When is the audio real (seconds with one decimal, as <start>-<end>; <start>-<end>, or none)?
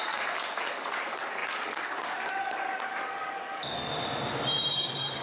3.9-4.7